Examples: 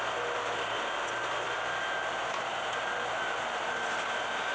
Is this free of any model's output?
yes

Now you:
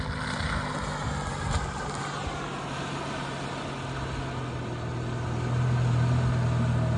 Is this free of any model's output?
yes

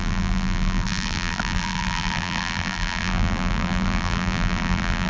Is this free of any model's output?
no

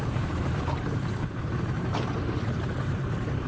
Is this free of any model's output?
no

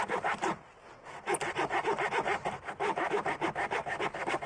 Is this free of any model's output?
yes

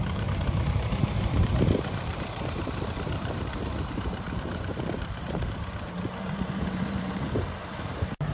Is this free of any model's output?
no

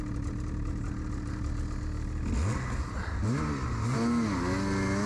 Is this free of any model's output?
yes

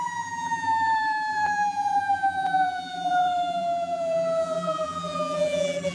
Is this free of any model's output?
no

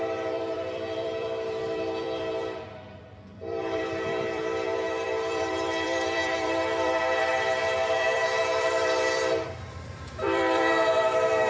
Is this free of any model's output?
no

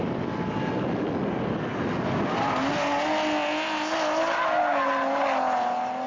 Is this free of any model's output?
yes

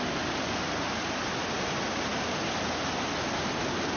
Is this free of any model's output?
yes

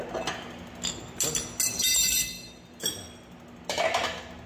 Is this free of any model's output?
yes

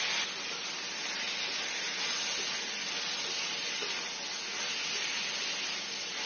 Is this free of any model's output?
yes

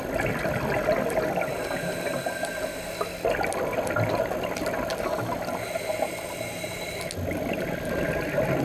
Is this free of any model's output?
yes